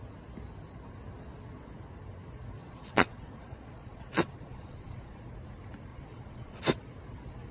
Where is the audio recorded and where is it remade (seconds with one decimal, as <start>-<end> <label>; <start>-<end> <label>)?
0.0-2.6 recorded; 2.6-5.2 remade; 5.2-5.9 recorded; 5.9-6.6 remade; 6.6-7.5 recorded